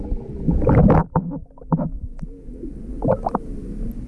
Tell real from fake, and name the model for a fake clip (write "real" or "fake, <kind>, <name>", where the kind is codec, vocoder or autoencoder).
real